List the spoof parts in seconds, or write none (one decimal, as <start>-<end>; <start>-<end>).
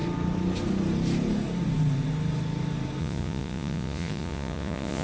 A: 3.0-5.0